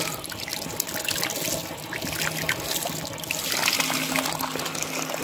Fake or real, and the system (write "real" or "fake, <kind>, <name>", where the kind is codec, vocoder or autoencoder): real